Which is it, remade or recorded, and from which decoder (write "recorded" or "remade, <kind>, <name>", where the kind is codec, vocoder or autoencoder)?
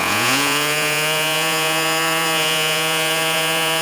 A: remade, vocoder, Vocos